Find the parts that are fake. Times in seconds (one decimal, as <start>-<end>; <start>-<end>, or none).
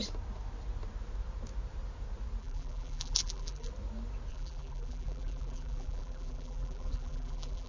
2.4-3.7; 4.3-7.7